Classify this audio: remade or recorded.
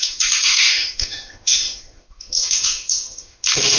remade